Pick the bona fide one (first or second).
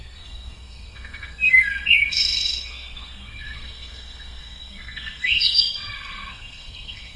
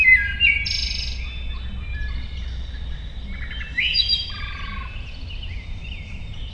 second